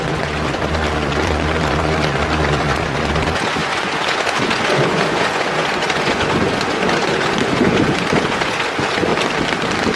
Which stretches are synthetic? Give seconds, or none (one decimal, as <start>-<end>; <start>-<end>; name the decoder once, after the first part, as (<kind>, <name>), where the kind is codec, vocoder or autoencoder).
0.0-9.1 (vocoder, Vocos)